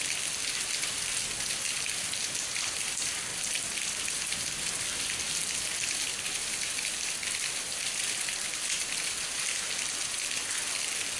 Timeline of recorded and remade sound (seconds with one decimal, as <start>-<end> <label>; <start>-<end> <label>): 0.0-11.2 recorded